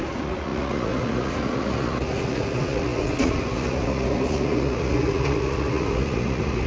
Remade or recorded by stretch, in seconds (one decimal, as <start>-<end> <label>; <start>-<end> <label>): 0.0-6.7 remade